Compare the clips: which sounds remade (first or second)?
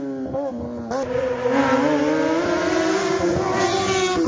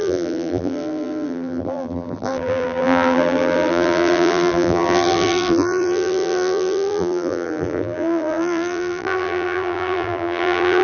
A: second